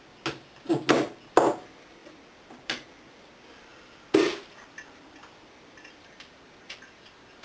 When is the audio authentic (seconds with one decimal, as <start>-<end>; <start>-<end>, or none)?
0.0-2.0; 3.3-3.7; 6.3-7.4